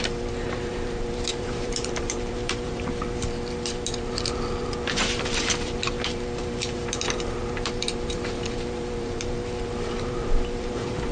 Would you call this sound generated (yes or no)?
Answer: yes